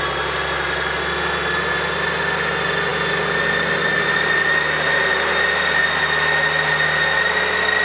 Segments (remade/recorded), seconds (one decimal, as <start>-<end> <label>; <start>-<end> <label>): 0.0-2.9 recorded; 2.9-7.8 remade